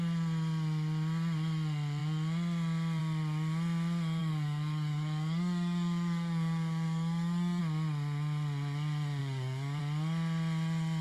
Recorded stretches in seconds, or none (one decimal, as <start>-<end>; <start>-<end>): 0.0-4.2; 7.6-9.2; 9.8-11.0